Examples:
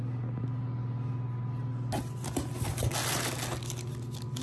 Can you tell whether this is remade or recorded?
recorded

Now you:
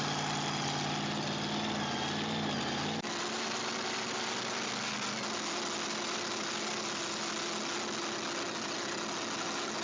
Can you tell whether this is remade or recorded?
recorded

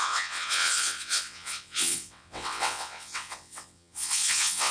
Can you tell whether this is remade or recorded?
remade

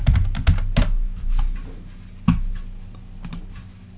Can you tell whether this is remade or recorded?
recorded